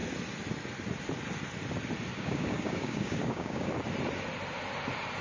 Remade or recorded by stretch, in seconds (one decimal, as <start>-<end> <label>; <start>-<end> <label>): 0.0-2.1 recorded; 2.1-3.7 remade; 3.7-5.2 recorded